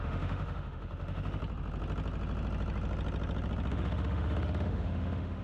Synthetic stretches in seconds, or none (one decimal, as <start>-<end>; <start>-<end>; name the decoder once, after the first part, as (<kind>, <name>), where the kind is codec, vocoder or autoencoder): 0.0-1.4 (autoencoder, DAC-VAE); 3.7-5.4